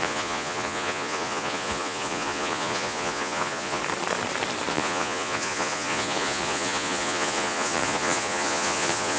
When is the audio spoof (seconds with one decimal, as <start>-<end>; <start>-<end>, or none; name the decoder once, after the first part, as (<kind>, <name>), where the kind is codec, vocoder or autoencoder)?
0.0-3.8 (vocoder, Vocos); 4.7-9.2

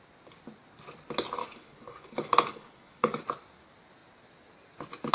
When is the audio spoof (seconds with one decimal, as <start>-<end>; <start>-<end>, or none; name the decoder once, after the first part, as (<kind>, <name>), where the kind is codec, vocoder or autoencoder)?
1.4-3.2 (codec, DAC)

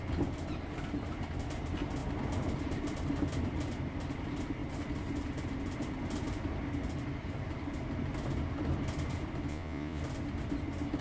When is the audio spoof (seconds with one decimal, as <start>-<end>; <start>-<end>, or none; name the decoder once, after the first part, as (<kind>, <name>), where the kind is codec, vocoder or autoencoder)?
9.5-10.0 (vocoder, Vocos)